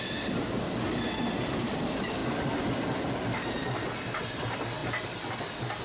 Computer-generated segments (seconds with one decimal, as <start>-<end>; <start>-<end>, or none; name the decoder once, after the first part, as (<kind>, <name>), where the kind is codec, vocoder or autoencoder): none